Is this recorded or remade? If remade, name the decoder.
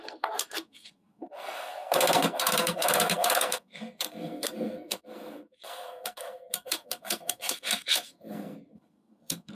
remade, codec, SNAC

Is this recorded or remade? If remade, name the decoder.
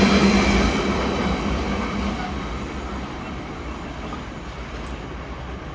recorded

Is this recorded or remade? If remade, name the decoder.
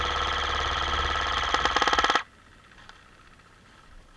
recorded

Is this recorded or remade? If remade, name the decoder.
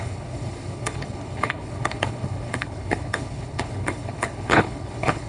remade, codec, HILCodec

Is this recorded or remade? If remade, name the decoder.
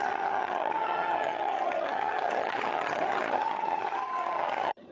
remade, vocoder, HiFi-GAN